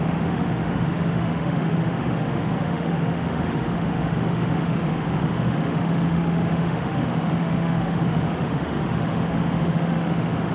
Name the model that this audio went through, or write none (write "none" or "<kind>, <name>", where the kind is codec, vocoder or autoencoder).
autoencoder, DAC-VAE